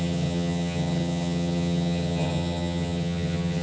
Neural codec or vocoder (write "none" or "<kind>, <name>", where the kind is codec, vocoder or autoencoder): vocoder, HiFi-GAN